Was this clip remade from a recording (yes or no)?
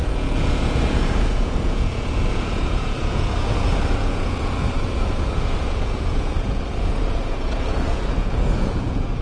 yes